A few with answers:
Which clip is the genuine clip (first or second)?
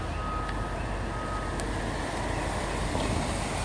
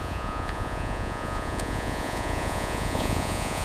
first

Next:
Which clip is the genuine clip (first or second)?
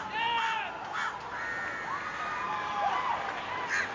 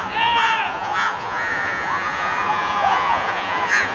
first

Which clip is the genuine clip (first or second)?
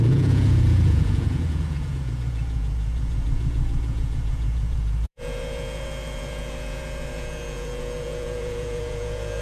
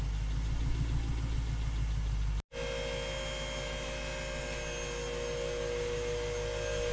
second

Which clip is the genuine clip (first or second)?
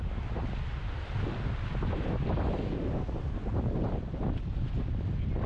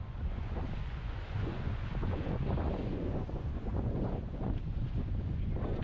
first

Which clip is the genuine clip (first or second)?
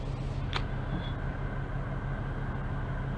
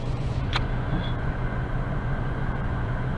first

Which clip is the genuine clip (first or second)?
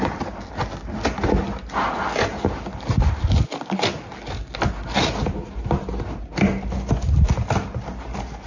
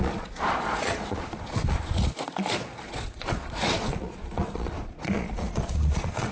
first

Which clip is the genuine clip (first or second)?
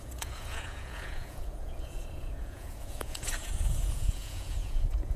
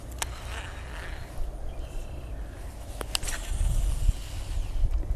second